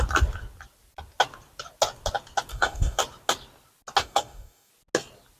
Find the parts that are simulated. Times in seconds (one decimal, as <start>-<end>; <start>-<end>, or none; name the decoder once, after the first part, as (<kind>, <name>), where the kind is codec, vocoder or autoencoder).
2.5-3.0 (codec, DAC); 4.0-4.7